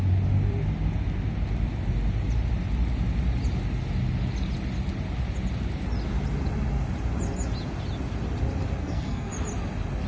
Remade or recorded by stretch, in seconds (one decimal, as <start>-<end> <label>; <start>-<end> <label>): 0.0-8.8 recorded; 8.8-9.3 remade; 9.3-10.1 recorded